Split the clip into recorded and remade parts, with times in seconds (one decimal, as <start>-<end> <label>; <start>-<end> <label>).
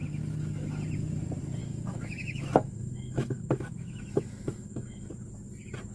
0.0-1.6 recorded; 1.6-5.1 remade; 5.1-5.9 recorded